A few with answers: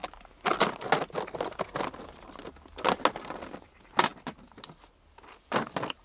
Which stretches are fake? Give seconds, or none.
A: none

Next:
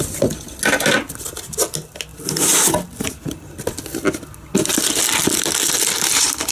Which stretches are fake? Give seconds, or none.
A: none